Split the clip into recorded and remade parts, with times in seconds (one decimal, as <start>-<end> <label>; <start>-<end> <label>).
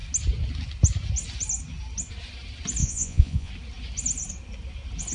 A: 0.0-2.8 recorded; 2.8-3.5 remade; 3.5-5.1 recorded